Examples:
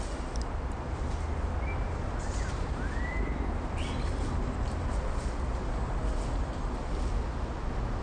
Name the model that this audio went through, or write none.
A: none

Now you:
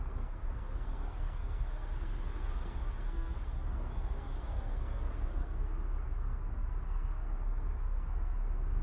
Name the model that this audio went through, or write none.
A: codec, SNAC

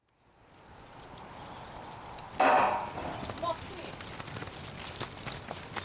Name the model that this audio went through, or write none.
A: none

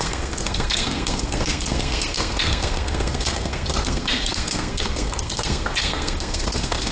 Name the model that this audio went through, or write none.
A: codec, SNAC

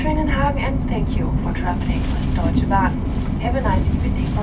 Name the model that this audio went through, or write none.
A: none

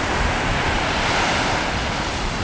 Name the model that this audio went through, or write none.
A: none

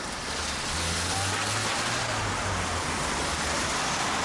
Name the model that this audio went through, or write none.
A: none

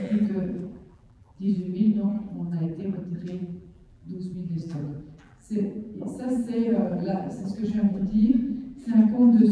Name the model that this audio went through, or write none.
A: vocoder, BigVGAN v2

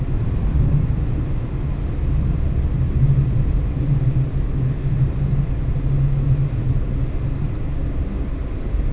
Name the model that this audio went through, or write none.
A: none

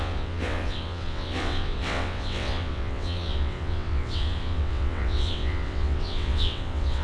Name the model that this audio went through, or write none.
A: vocoder, WaveNeXt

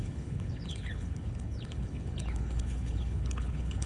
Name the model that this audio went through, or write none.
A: codec, HILCodec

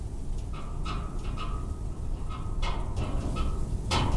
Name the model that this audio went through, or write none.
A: none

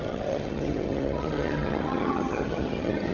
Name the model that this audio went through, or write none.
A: vocoder, HiFi-GAN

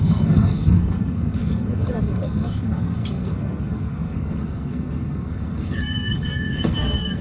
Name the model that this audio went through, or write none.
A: codec, SNAC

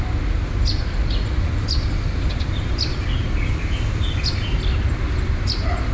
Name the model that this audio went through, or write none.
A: none